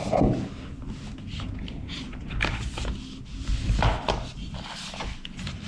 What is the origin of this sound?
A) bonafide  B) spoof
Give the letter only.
A